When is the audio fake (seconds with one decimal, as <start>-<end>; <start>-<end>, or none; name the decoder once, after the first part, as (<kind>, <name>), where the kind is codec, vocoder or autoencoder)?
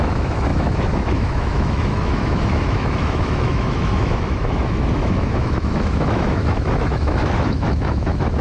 0.0-8.4 (autoencoder, DAC-VAE)